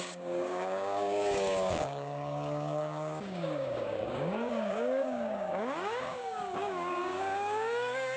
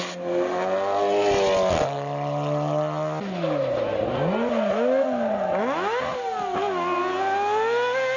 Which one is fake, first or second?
first